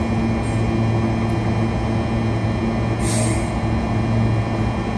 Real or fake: real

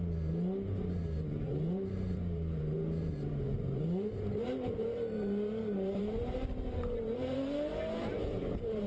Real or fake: fake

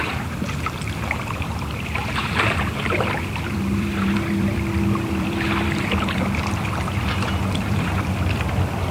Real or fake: fake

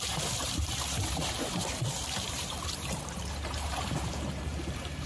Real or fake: fake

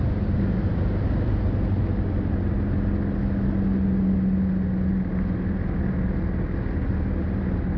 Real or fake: real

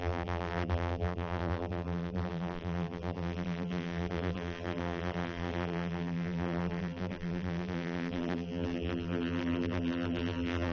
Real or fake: fake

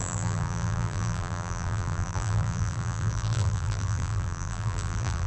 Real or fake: fake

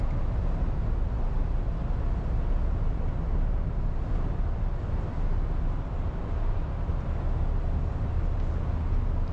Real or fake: real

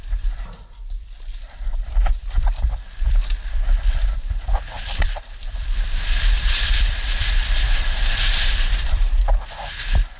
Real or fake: fake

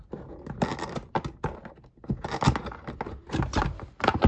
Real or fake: real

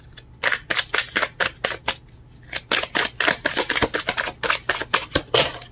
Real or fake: real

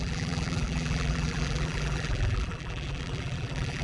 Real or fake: fake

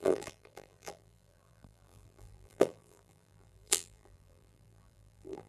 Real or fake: fake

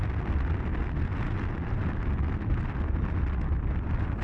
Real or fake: real